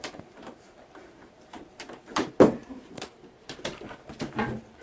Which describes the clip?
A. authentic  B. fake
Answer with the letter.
B